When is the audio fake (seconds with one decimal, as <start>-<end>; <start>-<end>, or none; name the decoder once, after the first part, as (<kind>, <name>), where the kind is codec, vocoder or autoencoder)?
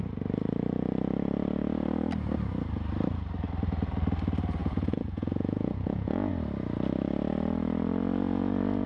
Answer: 4.6-6.3 (vocoder, Vocos)